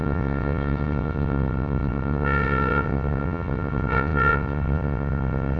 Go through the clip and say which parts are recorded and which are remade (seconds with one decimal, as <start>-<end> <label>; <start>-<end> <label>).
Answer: 0.0-5.6 remade